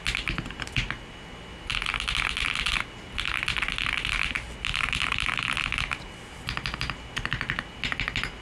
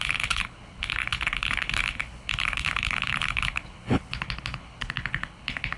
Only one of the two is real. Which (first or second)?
first